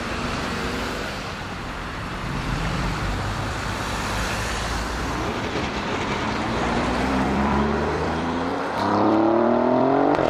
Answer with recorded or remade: remade